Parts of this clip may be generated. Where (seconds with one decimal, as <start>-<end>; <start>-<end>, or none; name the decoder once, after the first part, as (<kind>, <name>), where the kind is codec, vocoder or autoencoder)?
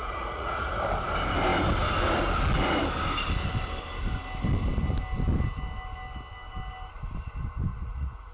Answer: 0.0-0.7 (vocoder, Vocos); 7.7-8.3